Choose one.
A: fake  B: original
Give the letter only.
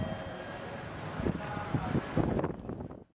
B